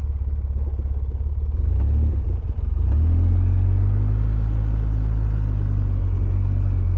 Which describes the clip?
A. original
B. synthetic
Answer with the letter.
A